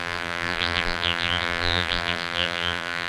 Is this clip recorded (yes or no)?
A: no